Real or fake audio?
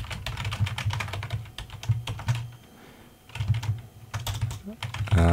real